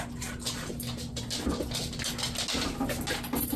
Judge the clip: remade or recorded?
recorded